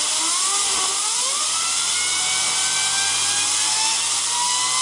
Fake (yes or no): no